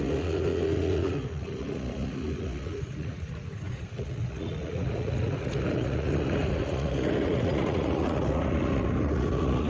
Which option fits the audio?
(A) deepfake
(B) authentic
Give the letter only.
A